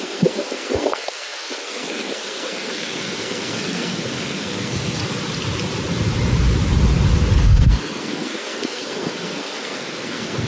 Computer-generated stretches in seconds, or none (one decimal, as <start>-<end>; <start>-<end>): 0.0-5.0; 7.4-10.5